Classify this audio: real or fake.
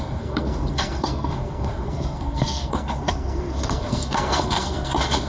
fake